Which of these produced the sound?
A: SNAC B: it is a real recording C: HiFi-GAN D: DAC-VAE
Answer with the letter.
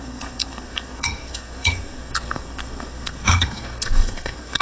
A